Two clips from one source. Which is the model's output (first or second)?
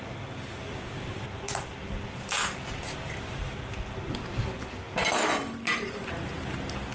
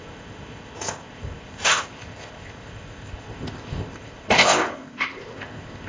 second